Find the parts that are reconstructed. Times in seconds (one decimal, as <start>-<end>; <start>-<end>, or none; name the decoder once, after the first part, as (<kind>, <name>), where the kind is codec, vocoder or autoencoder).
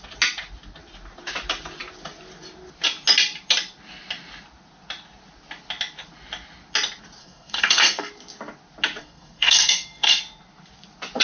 7.2-8.1 (codec, SNAC); 9.0-10.2